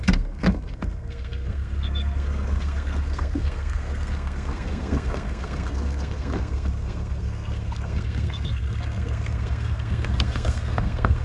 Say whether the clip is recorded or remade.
remade